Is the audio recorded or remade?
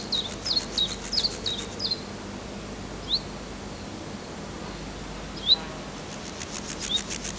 recorded